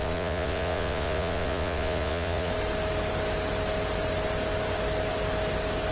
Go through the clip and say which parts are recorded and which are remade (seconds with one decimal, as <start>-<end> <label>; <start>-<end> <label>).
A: 0.0-2.5 remade; 2.5-5.9 recorded